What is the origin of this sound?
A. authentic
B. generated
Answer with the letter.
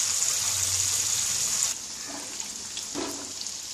A